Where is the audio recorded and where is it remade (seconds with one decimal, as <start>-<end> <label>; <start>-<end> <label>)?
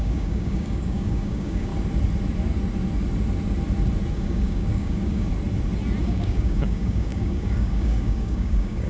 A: 0.0-1.7 remade; 1.7-4.1 recorded; 4.1-5.3 remade; 5.3-6.0 recorded; 6.0-8.9 remade